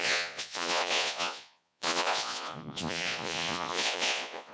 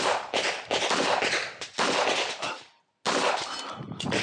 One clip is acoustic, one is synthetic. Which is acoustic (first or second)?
second